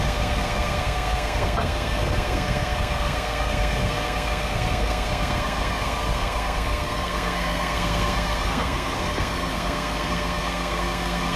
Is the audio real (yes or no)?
no